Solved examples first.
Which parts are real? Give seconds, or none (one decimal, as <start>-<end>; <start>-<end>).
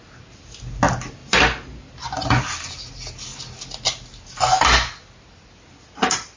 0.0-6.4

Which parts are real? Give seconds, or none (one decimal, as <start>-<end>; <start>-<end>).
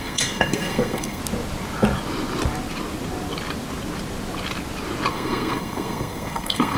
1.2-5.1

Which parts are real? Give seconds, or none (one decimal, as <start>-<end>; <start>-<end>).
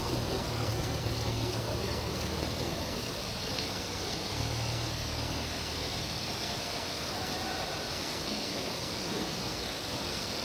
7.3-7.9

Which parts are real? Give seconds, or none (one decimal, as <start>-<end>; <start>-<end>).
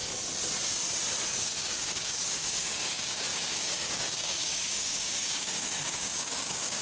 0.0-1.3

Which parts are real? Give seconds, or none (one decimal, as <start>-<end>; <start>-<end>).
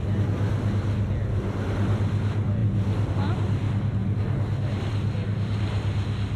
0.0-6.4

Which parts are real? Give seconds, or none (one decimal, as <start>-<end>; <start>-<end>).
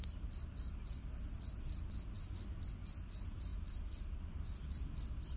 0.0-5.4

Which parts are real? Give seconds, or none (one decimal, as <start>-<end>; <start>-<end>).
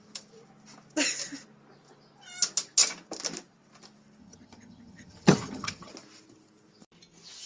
0.0-4.2; 5.9-7.5